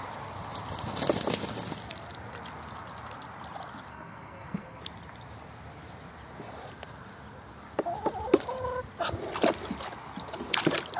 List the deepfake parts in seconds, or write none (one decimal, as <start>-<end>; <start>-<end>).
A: 3.9-4.8